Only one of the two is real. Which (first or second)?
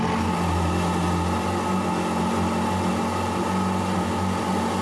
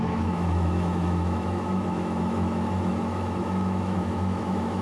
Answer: first